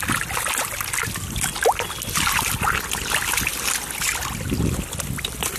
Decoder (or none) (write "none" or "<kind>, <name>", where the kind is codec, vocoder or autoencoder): none